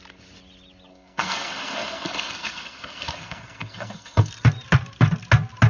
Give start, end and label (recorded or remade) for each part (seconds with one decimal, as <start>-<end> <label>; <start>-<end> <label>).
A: 0.0-0.9 recorded; 0.9-4.3 remade; 4.3-5.7 recorded